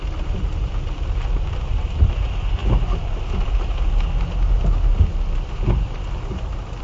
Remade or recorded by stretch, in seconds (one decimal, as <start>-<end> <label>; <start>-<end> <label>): 0.0-0.5 remade; 0.5-6.8 recorded